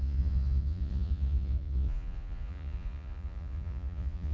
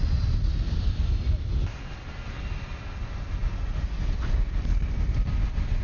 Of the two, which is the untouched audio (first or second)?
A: second